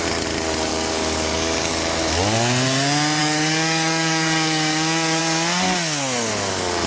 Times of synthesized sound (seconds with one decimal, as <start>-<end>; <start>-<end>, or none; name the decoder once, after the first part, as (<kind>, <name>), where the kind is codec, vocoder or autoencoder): 0.7-1.7 (codec, DAC); 3.2-5.2